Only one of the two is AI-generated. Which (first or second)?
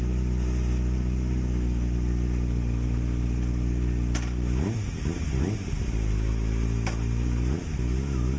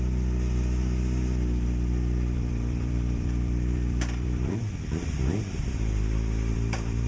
second